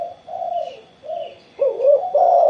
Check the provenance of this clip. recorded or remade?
remade